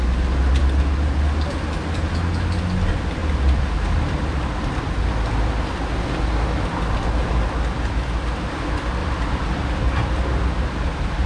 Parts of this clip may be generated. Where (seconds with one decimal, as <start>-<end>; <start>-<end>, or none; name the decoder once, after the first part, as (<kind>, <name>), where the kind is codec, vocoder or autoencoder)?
3.2-4.5 (vocoder, BigVGAN v2); 9.0-9.8